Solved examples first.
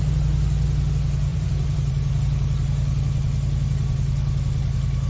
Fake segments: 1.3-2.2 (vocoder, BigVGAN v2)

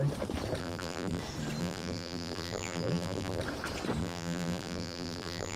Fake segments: 0.6-1.2 (vocoder, BigVGAN v2); 1.6-3.4; 4.0-5.6

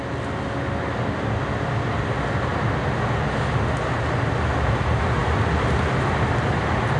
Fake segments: none

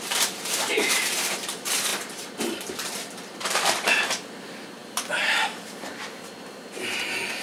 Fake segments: 0.0-7.4 (vocoder, BigVGAN v2)

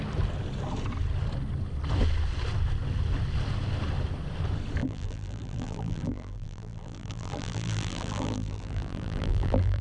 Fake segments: 4.8-9.8 (vocoder, BigVGAN v2)

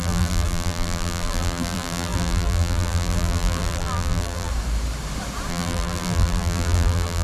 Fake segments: 0.0-4.5 (vocoder, BigVGAN v2); 5.5-7.2

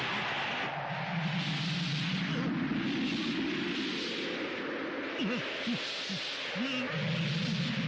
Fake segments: none